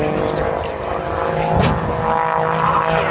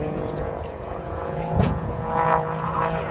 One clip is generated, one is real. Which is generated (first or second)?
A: second